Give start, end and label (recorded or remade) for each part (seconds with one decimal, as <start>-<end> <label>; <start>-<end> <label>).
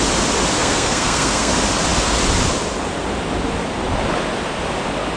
0.0-0.6 recorded; 0.6-1.5 remade; 1.5-5.2 recorded